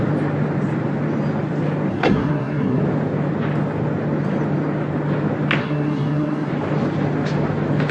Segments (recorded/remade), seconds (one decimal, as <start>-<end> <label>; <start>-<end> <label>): 0.0-1.9 recorded; 1.9-2.8 remade; 2.8-5.6 recorded; 5.6-6.5 remade; 6.5-7.9 recorded